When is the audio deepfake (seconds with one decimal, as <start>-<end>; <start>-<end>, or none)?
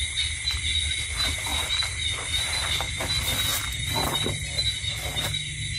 1.5-2.8; 3.5-4.5